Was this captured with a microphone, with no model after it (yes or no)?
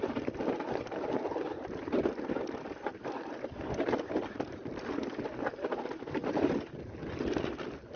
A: yes